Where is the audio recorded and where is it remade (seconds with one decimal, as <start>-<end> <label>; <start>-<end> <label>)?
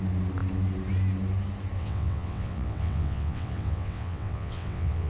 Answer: 0.0-1.8 recorded; 1.8-5.1 remade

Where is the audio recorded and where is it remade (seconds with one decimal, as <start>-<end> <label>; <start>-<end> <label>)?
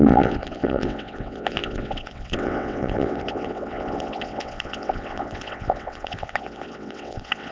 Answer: 0.0-7.5 remade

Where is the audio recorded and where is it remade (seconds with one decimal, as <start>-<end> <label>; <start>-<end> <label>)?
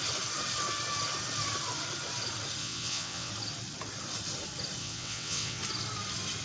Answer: 0.0-2.6 recorded; 2.6-3.3 remade; 3.3-4.8 recorded; 4.8-5.6 remade; 5.6-6.4 recorded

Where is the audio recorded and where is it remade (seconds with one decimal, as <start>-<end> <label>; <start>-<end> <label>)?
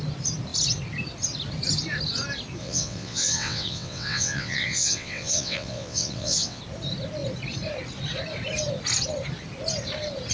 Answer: 0.0-2.6 recorded; 2.6-6.6 remade; 6.6-10.3 recorded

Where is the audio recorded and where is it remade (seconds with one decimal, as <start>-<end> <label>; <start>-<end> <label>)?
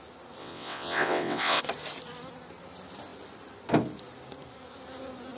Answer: 0.0-0.4 recorded; 0.4-1.6 remade; 1.6-5.4 recorded